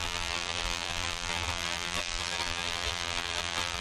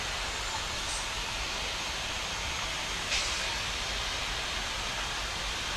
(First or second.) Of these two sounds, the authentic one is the second